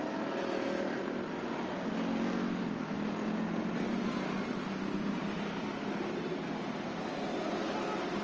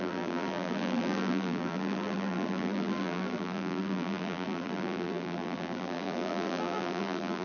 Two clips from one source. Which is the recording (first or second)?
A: first